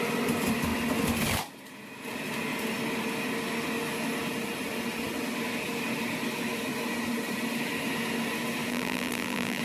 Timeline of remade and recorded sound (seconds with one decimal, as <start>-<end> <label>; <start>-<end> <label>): 0.0-8.7 recorded; 8.7-9.6 remade

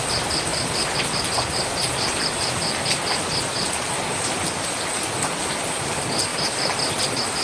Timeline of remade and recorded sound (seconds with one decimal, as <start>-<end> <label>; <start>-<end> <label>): 0.0-7.4 recorded

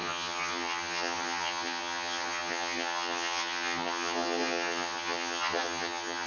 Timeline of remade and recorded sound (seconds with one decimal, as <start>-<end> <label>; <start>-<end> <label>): 0.0-6.3 remade

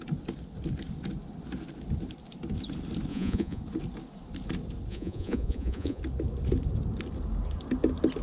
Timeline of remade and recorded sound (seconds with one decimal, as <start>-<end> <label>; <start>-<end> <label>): 0.0-3.1 recorded; 3.1-3.6 remade; 3.6-4.9 recorded; 4.9-6.0 remade; 6.0-8.2 recorded

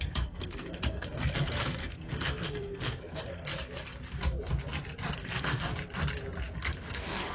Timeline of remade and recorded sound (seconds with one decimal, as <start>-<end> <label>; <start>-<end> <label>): 0.0-3.5 remade; 3.5-5.1 recorded; 5.1-5.7 remade; 5.7-6.5 recorded; 6.5-7.3 remade

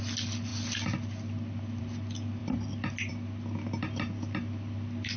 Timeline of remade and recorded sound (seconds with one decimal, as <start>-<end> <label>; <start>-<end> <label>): 0.0-5.2 recorded